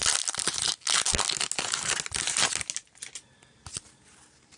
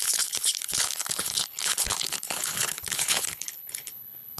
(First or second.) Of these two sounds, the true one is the first